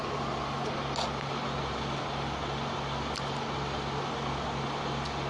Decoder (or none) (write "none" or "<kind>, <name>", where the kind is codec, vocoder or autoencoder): none